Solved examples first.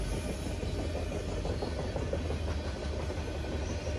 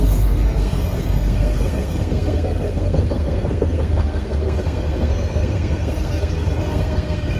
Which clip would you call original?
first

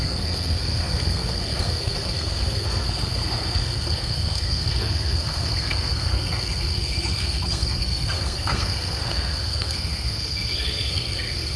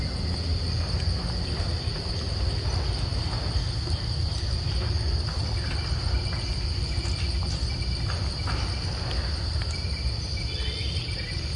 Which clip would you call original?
second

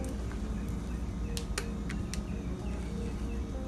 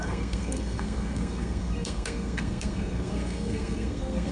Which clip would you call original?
first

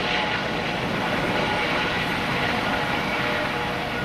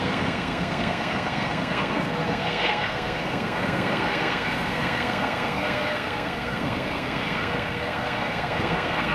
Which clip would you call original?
first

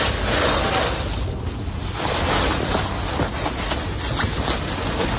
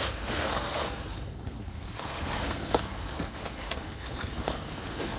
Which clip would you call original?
first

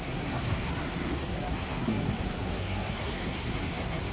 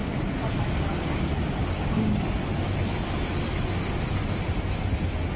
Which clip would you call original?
second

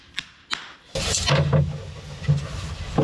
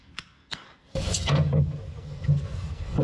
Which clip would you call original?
first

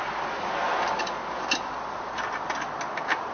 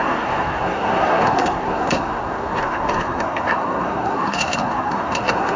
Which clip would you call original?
first